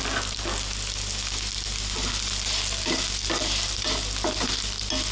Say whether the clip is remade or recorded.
recorded